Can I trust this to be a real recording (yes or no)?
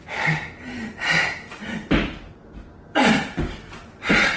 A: yes